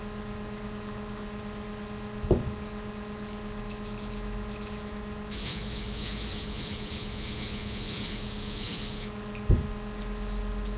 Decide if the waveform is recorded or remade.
recorded